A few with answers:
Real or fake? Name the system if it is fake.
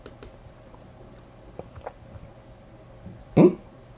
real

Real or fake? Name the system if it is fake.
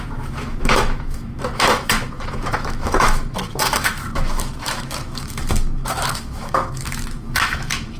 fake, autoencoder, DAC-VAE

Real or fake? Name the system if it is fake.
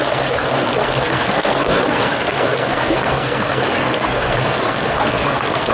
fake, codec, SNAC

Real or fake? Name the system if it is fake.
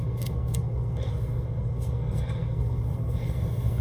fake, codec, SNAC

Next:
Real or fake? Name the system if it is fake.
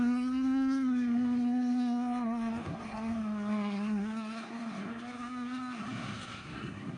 fake, codec, SNAC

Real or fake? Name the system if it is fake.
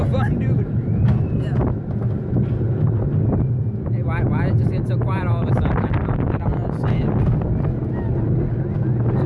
real